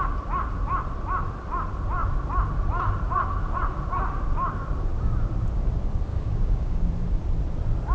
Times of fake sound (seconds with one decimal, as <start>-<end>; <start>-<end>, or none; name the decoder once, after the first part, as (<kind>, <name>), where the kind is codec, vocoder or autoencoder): 6.1-6.9 (codec, DAC)